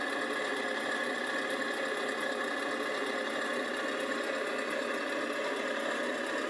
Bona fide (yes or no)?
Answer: yes